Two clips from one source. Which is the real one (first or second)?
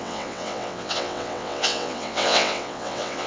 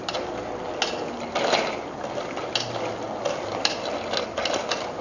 second